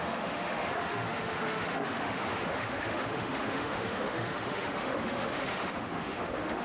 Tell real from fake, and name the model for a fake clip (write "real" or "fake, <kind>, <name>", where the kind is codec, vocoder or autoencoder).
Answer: fake, autoencoder, DAC-VAE